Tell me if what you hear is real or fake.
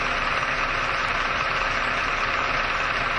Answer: real